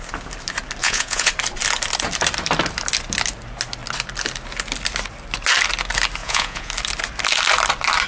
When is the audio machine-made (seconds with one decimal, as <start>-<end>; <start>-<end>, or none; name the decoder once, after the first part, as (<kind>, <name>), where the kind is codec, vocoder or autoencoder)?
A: 0.8-1.3 (vocoder, Vocos); 6.2-6.7